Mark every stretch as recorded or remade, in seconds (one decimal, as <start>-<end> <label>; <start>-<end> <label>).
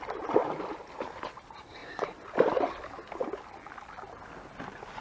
0.0-5.0 recorded